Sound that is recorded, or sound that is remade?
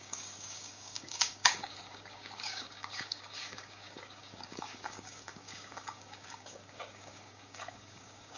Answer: remade